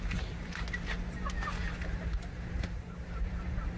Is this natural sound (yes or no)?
no